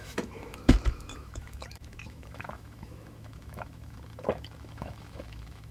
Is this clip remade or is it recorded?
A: remade